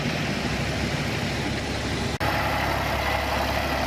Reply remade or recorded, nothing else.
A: recorded